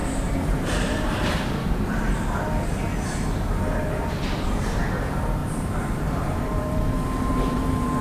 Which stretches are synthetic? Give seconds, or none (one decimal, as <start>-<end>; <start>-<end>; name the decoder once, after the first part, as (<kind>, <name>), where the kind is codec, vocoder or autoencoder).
0.0-2.4 (vocoder, BigVGAN v2); 3.8-4.8; 5.4-8.0